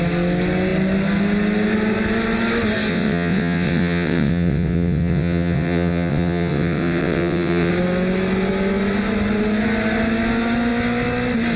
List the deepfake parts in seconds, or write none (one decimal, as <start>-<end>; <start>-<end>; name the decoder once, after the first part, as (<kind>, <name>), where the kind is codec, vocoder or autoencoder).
2.9-7.7 (vocoder, WaveNeXt)